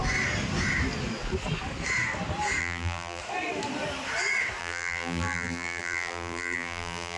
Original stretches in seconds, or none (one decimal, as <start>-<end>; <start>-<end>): 0.0-2.6; 3.2-4.6